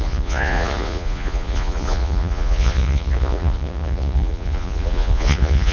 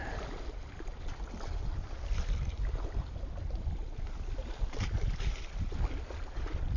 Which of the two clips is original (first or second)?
second